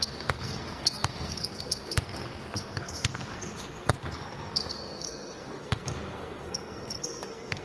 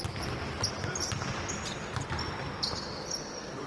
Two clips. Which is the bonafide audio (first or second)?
second